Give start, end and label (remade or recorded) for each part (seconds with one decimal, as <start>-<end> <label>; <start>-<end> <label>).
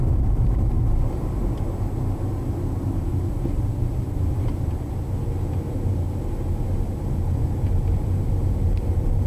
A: 0.0-9.3 recorded